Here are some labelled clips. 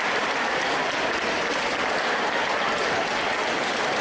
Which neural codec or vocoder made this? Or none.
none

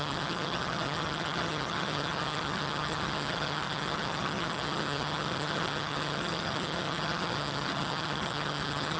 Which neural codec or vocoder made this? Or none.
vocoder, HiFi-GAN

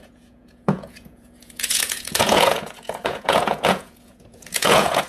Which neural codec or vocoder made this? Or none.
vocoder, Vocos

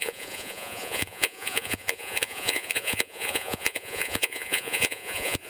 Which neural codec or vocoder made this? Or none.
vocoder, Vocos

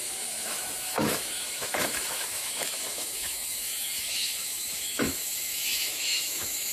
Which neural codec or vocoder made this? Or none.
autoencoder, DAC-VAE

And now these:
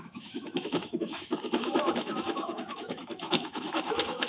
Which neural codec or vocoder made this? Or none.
autoencoder, DAC-VAE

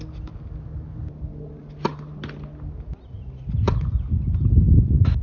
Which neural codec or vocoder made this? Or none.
none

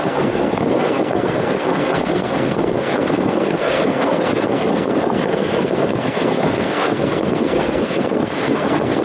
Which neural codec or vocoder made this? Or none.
codec, SNAC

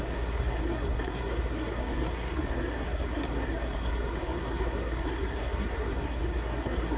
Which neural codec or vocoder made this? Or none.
codec, SNAC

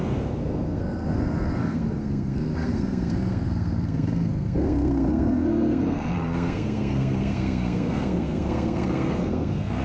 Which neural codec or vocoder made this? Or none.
codec, SNAC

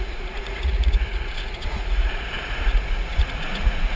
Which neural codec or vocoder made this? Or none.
vocoder, Vocos